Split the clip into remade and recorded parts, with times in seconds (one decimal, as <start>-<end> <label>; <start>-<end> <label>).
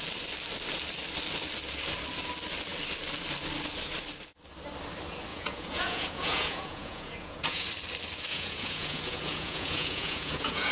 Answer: 0.0-5.3 recorded; 5.3-7.7 remade; 7.7-8.3 recorded; 8.3-10.7 remade